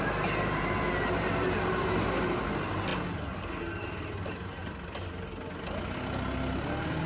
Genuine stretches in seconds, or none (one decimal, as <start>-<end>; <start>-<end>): 0.0-4.6; 5.1-7.1